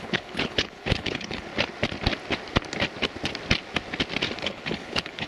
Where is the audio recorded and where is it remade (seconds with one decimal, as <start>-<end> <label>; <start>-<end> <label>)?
0.0-1.5 remade; 1.5-4.4 recorded; 4.4-5.3 remade